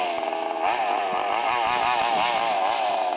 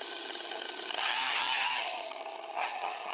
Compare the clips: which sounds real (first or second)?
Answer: first